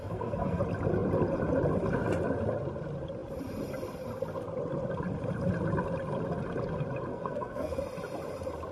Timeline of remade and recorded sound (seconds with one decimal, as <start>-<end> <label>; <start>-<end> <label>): 0.0-0.6 remade; 0.6-7.1 recorded; 7.1-7.8 remade; 7.8-8.7 recorded